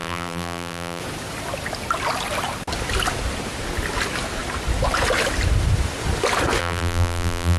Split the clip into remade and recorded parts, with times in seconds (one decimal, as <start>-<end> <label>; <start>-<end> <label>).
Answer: 0.0-1.0 remade; 1.0-6.6 recorded; 6.6-7.6 remade